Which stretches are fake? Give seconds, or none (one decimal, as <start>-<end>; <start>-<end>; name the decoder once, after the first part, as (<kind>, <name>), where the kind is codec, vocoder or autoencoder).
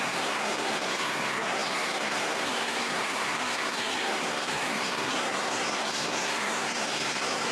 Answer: 0.0-7.5 (codec, SNAC)